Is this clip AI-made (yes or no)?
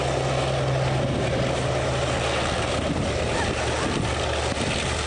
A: no